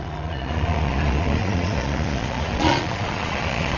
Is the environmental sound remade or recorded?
remade